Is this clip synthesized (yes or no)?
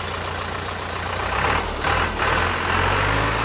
no